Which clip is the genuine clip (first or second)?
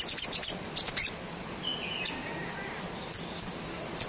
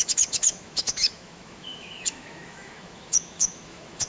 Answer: first